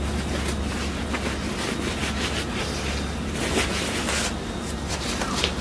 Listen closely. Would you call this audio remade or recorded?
recorded